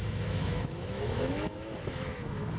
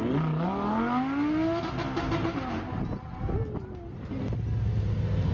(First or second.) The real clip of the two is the second